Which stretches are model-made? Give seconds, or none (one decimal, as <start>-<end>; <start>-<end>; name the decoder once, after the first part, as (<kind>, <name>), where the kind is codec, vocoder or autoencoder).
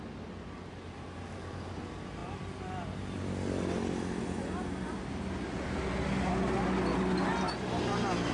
none